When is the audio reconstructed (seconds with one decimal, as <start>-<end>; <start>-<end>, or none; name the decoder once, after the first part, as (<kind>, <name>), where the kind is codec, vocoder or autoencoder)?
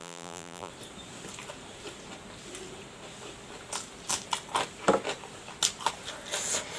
0.0-0.7 (vocoder, BigVGAN v2)